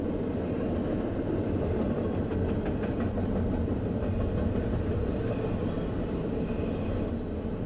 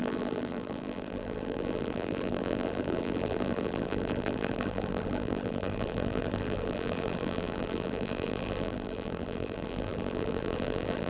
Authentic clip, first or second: first